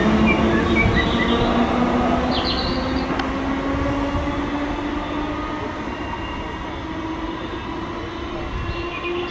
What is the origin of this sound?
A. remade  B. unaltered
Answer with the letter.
B